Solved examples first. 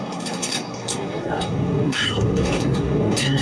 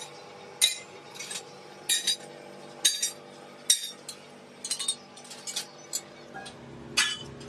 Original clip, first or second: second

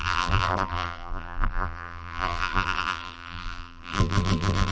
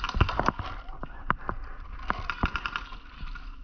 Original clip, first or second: second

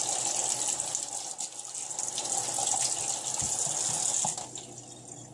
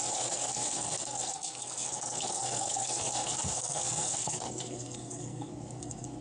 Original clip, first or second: first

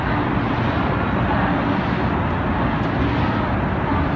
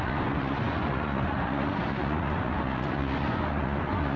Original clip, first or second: first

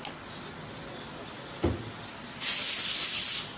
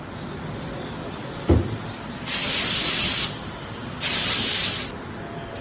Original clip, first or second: first